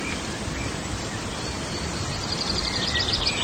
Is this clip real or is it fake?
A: fake